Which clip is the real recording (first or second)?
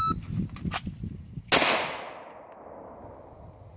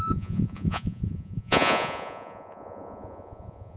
first